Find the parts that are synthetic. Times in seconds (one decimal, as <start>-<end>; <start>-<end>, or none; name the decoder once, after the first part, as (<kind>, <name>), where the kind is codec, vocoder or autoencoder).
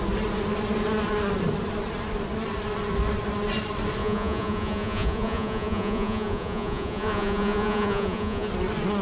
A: 4.0-8.5 (vocoder, Vocos)